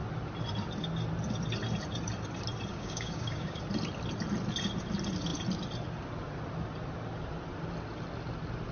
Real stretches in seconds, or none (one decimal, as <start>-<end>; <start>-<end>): 0.0-2.7; 3.6-8.7